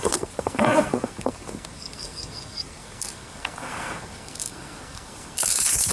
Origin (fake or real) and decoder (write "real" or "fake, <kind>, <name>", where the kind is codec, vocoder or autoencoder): fake, codec, SNAC